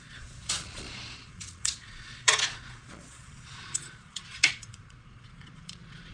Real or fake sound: fake